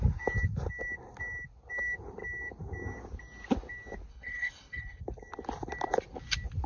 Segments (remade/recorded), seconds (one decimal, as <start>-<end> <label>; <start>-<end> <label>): 0.0-4.1 recorded; 4.1-5.0 remade; 5.0-6.7 recorded

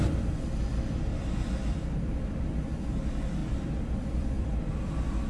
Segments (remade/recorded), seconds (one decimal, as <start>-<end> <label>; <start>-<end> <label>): 0.0-1.1 recorded; 1.1-2.9 remade; 2.9-3.4 recorded; 3.4-4.7 remade; 4.7-5.3 recorded

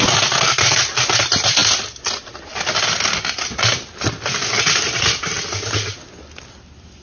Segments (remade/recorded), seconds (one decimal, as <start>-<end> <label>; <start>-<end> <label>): 0.0-7.0 recorded

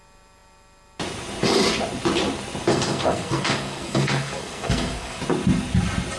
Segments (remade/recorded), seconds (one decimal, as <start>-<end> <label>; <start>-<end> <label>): 0.0-2.7 recorded; 2.7-5.2 remade; 5.2-6.2 recorded

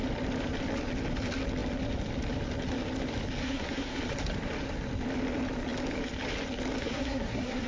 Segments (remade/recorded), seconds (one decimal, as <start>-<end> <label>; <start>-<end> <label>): 0.0-3.4 recorded; 3.4-4.0 remade; 4.0-6.8 recorded; 6.8-7.7 remade